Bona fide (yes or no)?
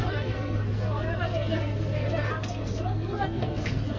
no